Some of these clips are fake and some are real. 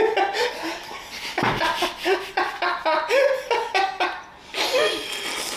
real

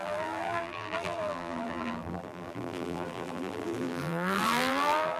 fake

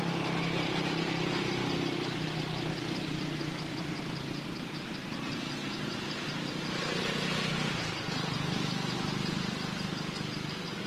real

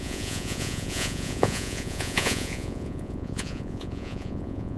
fake